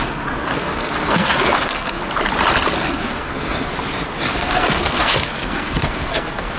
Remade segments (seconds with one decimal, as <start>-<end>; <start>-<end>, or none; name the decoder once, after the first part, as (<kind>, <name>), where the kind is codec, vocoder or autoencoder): 0.0-2.0 (codec, SNAC); 2.9-3.7; 4.3-6.6